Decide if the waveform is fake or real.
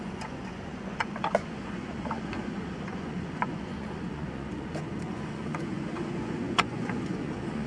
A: fake